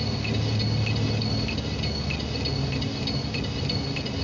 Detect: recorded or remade recorded